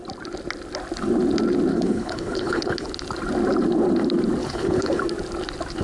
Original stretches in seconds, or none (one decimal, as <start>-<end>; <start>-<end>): 0.0-1.7; 2.9-4.4; 5.0-5.8